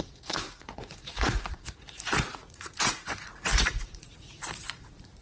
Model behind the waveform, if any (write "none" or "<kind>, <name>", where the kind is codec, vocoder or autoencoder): vocoder, Vocos